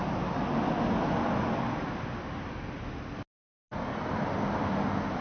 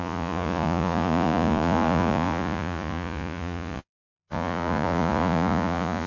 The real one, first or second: first